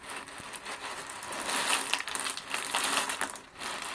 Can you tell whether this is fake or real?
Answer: real